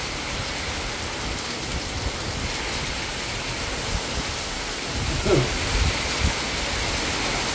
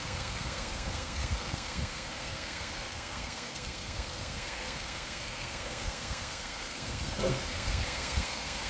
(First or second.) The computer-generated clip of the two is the second